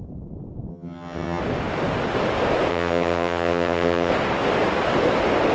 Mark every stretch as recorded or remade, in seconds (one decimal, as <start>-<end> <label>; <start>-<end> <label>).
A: 0.0-0.7 recorded; 0.7-1.4 remade; 1.4-2.7 recorded; 2.7-4.1 remade; 4.1-5.5 recorded